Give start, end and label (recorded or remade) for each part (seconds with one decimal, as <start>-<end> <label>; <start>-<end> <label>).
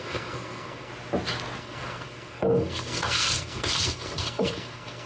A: 0.0-0.9 remade; 0.9-1.6 recorded; 1.6-5.1 remade